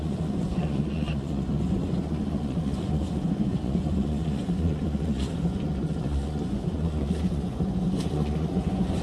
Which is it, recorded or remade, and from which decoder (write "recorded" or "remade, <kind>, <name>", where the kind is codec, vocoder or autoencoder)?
remade, vocoder, Vocos